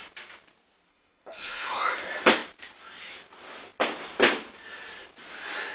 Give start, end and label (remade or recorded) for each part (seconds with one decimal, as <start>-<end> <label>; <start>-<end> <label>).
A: 0.0-0.9 recorded; 0.9-1.8 remade; 1.8-5.7 recorded